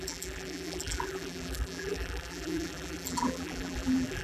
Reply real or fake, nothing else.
fake